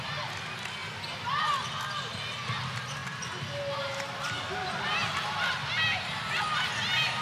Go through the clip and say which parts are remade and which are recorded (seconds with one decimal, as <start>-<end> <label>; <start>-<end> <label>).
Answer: 0.0-7.2 recorded